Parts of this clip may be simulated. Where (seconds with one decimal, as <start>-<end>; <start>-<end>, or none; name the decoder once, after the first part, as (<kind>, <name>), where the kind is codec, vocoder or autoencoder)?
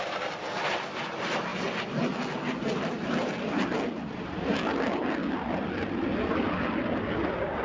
3.3-4.5 (vocoder, BigVGAN v2)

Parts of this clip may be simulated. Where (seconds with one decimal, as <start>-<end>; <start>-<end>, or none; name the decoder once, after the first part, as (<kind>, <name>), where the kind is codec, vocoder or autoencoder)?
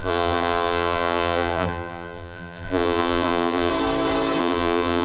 0.0-3.7 (vocoder, BigVGAN v2); 4.4-5.0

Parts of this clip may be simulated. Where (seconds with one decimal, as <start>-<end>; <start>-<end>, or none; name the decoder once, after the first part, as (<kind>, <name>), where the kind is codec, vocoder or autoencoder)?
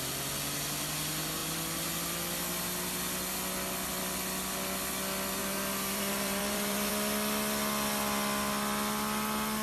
5.4-6.9 (vocoder, BigVGAN v2)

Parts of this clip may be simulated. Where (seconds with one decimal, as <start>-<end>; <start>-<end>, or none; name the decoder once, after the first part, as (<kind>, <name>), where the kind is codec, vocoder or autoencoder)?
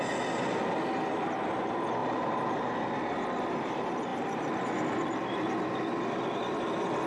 2.0-2.8 (vocoder, BigVGAN v2); 4.1-4.7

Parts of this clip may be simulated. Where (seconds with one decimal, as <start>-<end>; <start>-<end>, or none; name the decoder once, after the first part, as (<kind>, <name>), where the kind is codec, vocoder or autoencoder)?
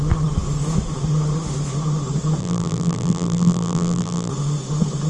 2.4-4.3 (vocoder, BigVGAN v2)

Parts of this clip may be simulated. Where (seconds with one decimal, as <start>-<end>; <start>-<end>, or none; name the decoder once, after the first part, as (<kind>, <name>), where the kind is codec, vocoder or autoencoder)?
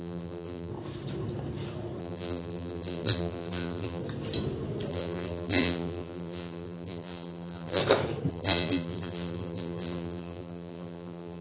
0.0-0.7 (vocoder, BigVGAN v2); 2.0-4.0; 4.9-7.8; 8.3-11.4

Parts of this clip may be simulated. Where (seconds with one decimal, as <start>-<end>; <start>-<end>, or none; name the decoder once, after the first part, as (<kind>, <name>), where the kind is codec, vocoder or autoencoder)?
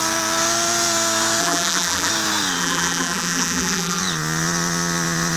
1.4-2.1 (vocoder, BigVGAN v2); 2.6-4.0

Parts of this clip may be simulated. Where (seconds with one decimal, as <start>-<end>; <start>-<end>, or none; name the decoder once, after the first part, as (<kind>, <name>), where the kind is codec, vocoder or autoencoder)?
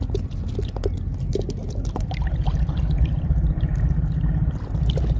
1.6-4.6 (vocoder, BigVGAN v2)